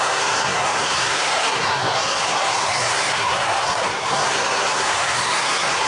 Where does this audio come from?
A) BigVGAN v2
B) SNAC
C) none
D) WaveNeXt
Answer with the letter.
B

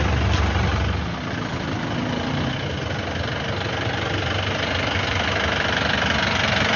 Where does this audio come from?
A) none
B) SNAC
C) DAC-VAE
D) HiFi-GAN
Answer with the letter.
A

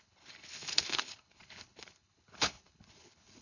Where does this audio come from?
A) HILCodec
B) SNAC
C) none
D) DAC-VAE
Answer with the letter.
A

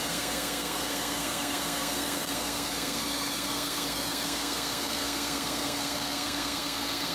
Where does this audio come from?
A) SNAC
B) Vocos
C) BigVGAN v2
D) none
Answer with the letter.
A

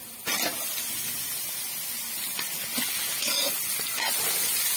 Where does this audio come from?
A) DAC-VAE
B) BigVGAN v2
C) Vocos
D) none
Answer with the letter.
D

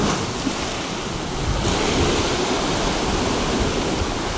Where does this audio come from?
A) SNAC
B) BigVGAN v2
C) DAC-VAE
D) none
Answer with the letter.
D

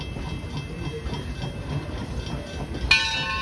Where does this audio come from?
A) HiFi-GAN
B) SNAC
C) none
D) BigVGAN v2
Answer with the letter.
C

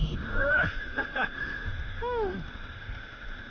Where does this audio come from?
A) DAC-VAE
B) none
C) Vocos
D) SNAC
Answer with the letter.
A